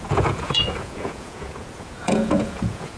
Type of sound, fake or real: fake